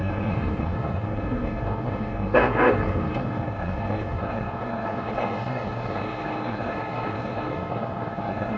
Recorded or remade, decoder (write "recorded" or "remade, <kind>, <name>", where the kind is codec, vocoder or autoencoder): remade, codec, SNAC